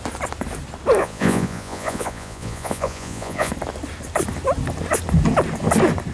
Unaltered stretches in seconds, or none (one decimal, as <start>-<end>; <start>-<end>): 0.0-1.0; 3.5-6.1